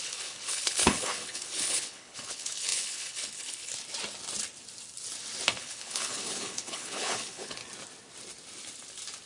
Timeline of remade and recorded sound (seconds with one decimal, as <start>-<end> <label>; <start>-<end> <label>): 0.0-3.7 remade; 3.7-5.6 recorded; 5.6-7.6 remade; 7.6-9.3 recorded